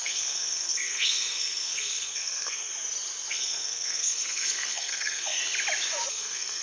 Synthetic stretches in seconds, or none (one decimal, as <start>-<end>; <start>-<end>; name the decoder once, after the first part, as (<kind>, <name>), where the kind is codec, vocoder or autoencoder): 0.0-2.7 (codec, SNAC); 3.3-5.4; 6.1-6.6